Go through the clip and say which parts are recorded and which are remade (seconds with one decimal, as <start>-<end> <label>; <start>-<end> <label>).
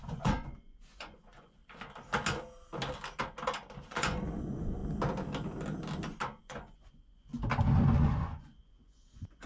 0.0-1.6 remade; 1.6-3.9 recorded; 3.9-4.8 remade; 4.8-6.4 recorded; 6.4-7.3 remade; 7.3-8.0 recorded; 8.0-9.5 remade